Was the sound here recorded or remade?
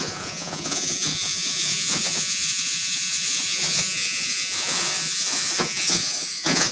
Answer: remade